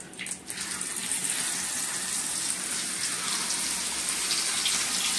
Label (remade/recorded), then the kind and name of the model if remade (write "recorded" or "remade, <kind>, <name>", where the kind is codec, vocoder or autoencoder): recorded